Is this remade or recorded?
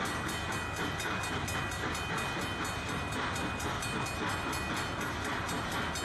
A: recorded